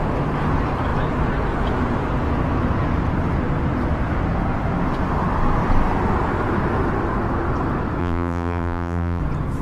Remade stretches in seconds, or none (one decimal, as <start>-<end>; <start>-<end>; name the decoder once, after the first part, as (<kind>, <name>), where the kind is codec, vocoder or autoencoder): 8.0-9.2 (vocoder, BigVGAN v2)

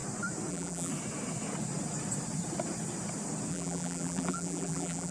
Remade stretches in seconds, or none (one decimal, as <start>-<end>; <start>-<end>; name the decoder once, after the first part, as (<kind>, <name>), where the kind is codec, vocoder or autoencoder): 0.5-0.9 (vocoder, BigVGAN v2); 3.5-5.1

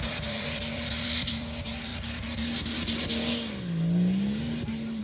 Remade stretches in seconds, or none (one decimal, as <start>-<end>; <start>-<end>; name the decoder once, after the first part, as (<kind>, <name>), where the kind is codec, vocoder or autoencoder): 0.0-1.9 (vocoder, BigVGAN v2)

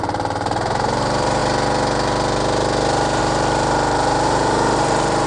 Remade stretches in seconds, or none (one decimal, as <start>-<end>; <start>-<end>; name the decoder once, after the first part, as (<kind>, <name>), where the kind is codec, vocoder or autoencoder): 0.0-1.4 (vocoder, BigVGAN v2); 3.2-5.3

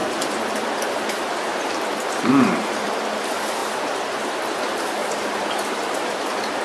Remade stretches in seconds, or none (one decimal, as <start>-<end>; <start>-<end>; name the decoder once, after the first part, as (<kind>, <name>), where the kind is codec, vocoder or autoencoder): 0.0-3.0 (vocoder, BigVGAN v2); 3.6-4.6; 5.0-6.6